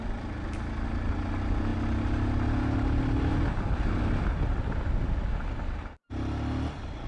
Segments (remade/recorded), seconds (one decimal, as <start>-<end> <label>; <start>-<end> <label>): 0.0-7.1 recorded